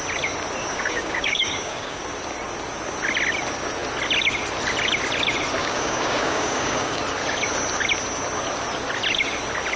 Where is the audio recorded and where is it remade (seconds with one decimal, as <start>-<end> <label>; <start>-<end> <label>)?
0.0-0.6 recorded; 0.6-2.0 remade; 2.0-5.6 recorded; 5.6-7.0 remade; 7.0-9.8 recorded